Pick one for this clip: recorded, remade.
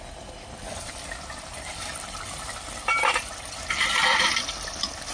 remade